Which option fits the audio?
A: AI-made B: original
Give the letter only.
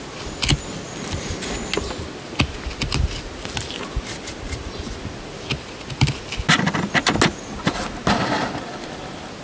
B